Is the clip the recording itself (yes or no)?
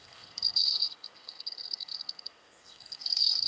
no